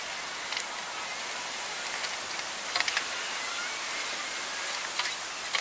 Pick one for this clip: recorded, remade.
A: recorded